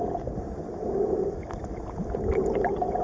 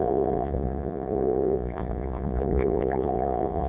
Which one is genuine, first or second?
first